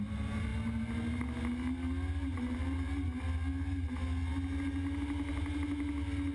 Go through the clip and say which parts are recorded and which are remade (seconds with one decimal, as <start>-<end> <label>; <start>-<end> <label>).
0.0-6.3 recorded